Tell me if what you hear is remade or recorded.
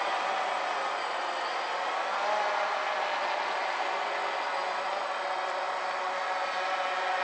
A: recorded